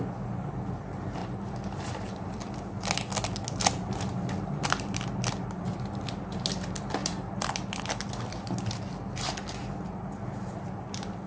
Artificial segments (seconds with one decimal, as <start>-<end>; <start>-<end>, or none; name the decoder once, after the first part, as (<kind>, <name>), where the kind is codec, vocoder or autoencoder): 1.2-2.5 (vocoder, BigVGAN v2); 7.0-7.5